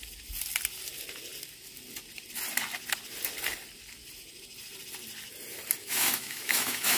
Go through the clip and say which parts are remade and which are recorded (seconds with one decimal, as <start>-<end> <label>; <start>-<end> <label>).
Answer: 0.0-5.8 recorded; 5.8-7.0 remade